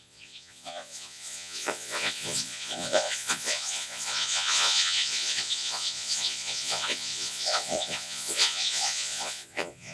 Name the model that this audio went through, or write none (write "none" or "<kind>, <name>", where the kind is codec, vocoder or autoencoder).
vocoder, Vocos